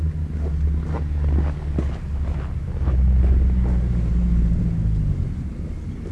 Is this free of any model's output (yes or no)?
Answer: yes